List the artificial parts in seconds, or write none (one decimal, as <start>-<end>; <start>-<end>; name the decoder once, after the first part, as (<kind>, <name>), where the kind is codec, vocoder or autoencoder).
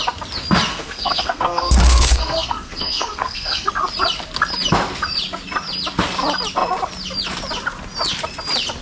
0.7-3.7 (codec, SNAC)